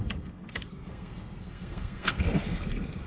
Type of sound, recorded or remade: remade